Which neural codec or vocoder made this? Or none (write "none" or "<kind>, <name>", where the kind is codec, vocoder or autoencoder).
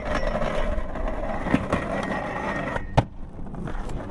none